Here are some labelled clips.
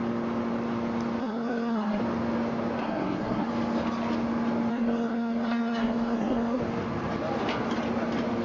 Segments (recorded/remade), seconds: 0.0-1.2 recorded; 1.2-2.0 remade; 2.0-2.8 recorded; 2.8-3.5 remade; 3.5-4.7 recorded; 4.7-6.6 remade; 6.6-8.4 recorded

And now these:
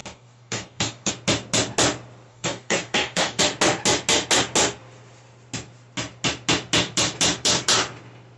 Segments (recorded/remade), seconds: 0.0-1.1 remade; 1.1-2.3 recorded; 2.3-3.4 remade; 3.4-8.4 recorded

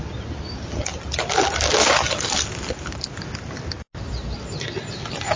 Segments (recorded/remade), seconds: 0.0-5.4 recorded

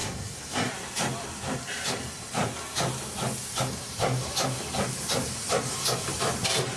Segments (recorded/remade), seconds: 0.0-0.7 remade; 0.7-6.8 recorded

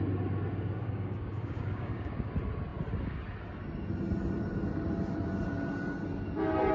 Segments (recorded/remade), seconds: 0.0-0.8 recorded; 0.8-2.3 remade; 2.3-6.7 recorded

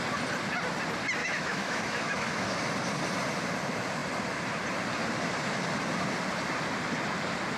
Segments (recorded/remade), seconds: 0.0-1.2 recorded; 1.2-2.6 remade; 2.6-7.6 recorded

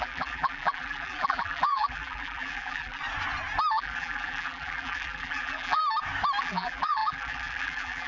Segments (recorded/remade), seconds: 0.0-3.0 remade; 3.0-3.7 recorded; 3.7-5.8 remade; 5.8-6.4 recorded; 6.4-8.1 remade

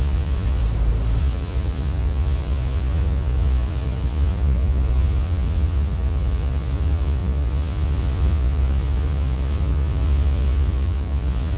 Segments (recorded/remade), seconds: 0.0-0.6 remade; 0.6-1.2 recorded; 1.2-11.6 remade